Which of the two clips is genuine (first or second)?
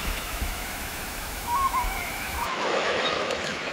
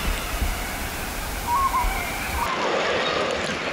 second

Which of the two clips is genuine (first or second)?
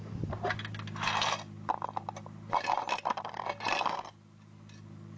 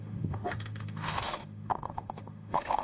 first